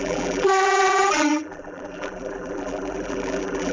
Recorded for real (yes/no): no